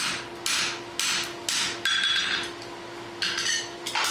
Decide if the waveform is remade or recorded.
recorded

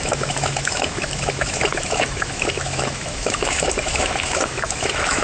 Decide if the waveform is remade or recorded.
remade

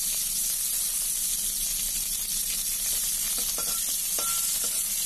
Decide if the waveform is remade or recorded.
recorded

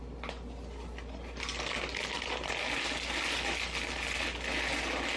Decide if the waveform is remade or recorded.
recorded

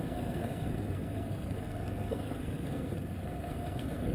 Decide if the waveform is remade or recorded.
remade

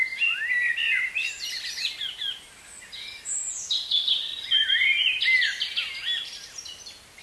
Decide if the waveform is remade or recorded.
recorded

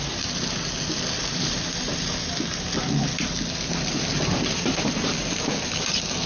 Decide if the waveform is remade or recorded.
remade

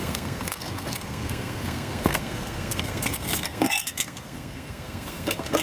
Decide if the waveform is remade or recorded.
remade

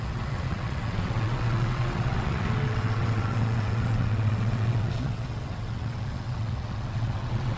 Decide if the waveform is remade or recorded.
remade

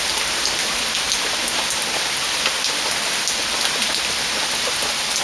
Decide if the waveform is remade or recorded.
recorded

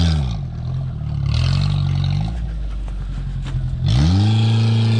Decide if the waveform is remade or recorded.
recorded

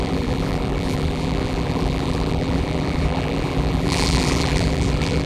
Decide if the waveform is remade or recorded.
remade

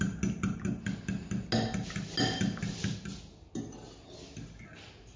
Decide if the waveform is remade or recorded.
recorded